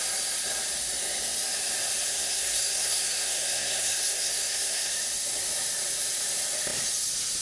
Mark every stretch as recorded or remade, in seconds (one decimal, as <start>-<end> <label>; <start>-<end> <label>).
0.0-2.1 recorded; 2.1-4.9 remade; 4.9-7.4 recorded